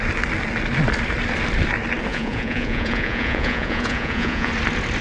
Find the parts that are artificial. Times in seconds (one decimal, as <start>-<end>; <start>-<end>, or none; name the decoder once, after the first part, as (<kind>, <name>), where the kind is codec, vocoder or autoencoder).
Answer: 2.1-4.5 (vocoder, Vocos)